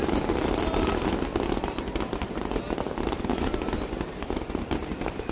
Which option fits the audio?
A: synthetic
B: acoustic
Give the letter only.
B